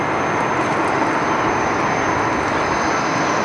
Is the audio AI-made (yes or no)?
no